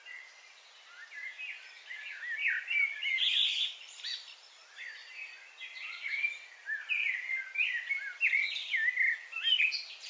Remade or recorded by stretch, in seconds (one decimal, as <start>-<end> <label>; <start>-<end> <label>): 0.0-10.1 recorded